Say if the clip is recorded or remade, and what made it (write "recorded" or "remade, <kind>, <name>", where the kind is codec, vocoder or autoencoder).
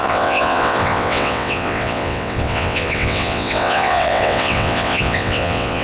remade, vocoder, WaveNeXt